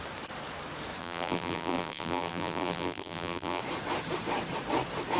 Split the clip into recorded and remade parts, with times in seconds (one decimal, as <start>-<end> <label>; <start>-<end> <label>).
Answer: 0.0-1.0 recorded; 1.0-3.6 remade; 3.6-5.2 recorded